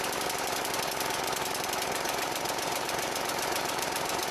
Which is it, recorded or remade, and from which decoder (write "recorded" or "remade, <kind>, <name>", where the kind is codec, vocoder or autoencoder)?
remade, vocoder, BigVGAN v2